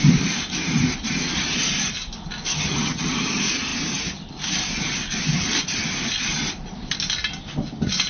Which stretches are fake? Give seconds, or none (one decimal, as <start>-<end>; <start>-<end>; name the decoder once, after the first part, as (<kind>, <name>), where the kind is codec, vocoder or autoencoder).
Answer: 2.5-3.1 (vocoder, HiFi-GAN)